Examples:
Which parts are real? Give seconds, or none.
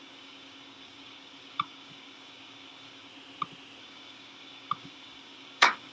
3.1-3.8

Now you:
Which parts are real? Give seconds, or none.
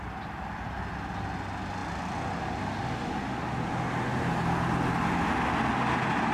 0.0-6.3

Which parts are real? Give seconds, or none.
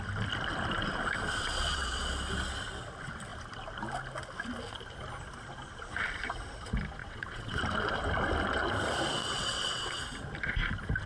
0.0-1.4; 2.0-7.0; 7.6-9.2; 10.0-11.1